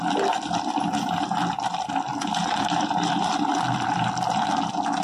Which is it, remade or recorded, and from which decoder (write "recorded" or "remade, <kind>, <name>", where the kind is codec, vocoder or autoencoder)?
recorded